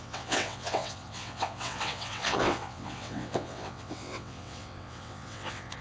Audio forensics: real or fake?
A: fake